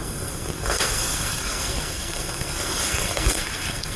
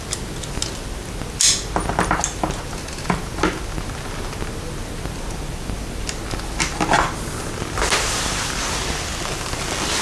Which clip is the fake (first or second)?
first